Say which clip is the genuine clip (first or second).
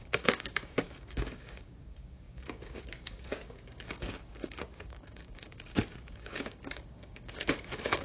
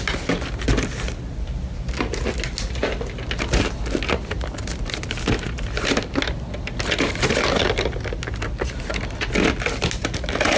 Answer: second